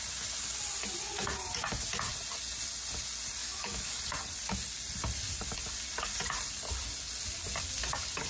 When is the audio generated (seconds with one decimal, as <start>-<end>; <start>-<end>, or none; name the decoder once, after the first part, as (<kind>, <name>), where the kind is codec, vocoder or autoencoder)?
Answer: 3.4-4.0 (autoencoder, DAC-VAE)